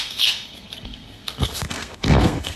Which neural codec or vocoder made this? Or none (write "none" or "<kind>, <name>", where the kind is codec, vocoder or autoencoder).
codec, SNAC